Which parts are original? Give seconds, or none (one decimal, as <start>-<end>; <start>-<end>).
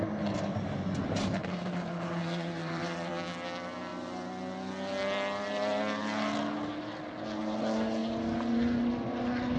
0.0-1.4; 3.1-9.6